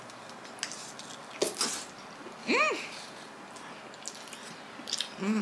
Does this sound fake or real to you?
real